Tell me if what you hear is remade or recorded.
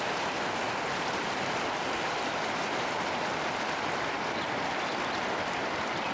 recorded